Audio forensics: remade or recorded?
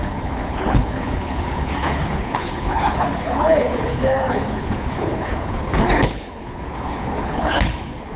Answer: remade